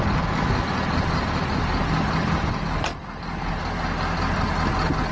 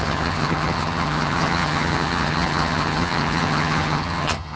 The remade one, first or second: second